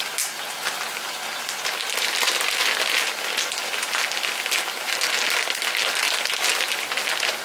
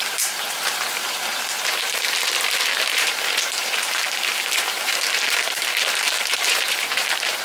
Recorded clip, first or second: first